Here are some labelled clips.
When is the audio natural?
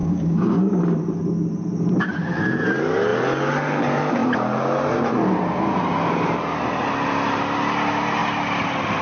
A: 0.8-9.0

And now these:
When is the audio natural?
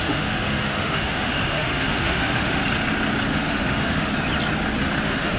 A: 2.6-3.3; 4.1-5.0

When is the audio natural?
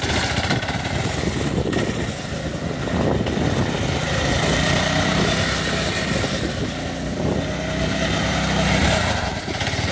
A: 0.0-8.8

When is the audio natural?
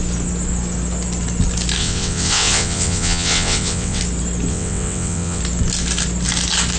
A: 0.0-1.8; 4.0-4.5; 5.4-6.8